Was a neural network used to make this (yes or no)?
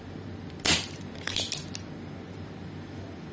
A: no